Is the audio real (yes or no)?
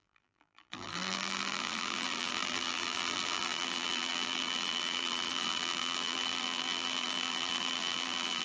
no